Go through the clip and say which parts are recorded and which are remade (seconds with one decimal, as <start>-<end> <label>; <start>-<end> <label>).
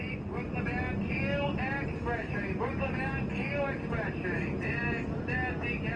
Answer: 0.0-6.0 recorded